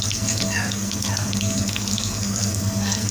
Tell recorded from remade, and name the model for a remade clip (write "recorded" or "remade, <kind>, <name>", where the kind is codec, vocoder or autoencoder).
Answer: remade, codec, SNAC